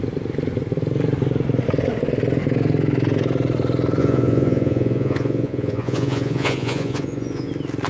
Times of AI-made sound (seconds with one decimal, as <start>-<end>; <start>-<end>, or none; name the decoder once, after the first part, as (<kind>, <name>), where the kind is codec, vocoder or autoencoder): 4.0-7.5 (vocoder, Vocos)